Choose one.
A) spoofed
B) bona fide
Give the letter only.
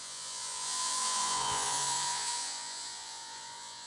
A